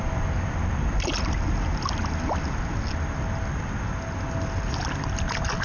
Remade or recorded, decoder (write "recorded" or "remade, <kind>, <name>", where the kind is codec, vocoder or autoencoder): recorded